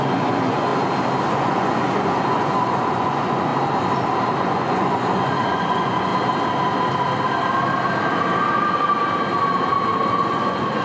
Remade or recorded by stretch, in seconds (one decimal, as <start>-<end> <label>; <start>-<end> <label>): 0.0-0.7 remade; 0.7-1.3 recorded; 1.3-3.5 remade; 3.5-4.4 recorded; 4.4-6.1 remade; 6.1-10.1 recorded; 10.1-10.8 remade